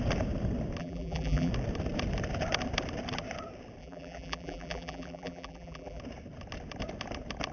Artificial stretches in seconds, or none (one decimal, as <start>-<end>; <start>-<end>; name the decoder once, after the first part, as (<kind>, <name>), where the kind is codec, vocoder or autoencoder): 0.8-1.5 (vocoder, BigVGAN v2); 3.8-6.0